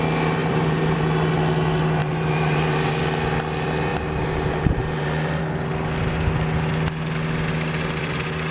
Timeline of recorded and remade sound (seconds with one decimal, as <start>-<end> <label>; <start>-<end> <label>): 0.0-0.4 recorded; 0.4-1.0 remade; 1.0-2.0 recorded; 2.0-3.0 remade; 3.0-3.9 recorded; 3.9-5.4 remade; 5.4-8.5 recorded